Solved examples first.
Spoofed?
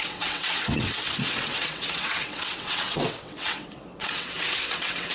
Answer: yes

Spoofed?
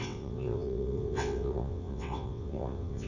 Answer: yes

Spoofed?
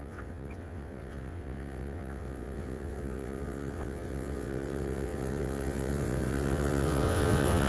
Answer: yes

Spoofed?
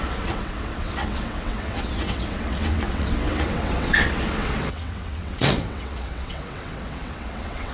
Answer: yes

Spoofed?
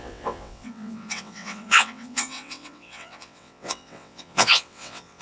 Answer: yes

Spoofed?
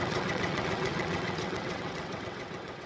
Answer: yes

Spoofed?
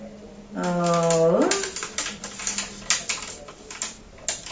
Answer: no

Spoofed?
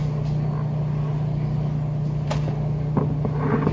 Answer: no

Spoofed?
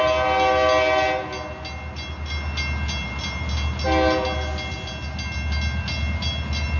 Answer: no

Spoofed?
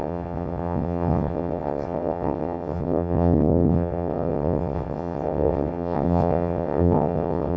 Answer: yes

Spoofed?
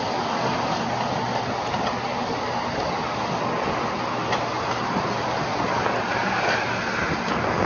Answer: no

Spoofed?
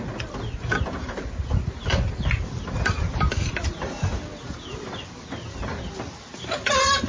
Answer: no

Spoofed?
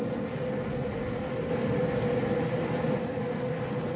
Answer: no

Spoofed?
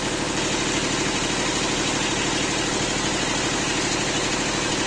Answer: no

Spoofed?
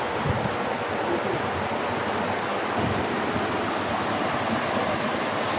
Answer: no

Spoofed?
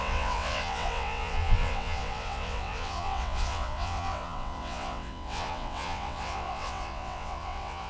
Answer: yes